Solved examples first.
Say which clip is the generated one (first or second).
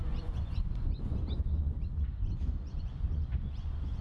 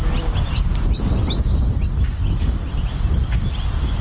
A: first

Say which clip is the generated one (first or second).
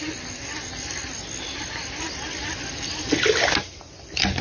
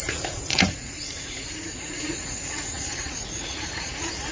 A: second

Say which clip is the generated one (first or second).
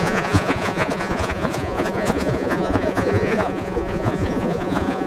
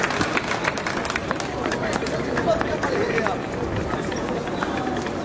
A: first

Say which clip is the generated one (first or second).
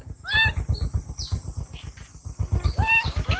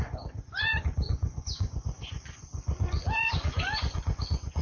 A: second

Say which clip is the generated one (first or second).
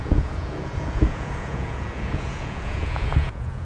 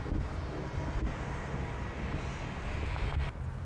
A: first